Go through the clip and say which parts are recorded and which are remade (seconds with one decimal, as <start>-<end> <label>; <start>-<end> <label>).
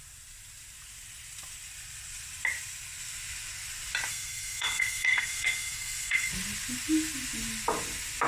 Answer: 0.0-4.1 recorded; 4.1-6.3 remade; 6.3-8.3 recorded